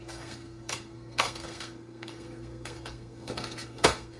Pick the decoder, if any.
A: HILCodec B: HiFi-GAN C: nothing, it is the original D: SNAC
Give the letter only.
D